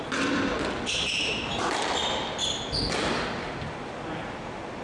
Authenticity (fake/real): real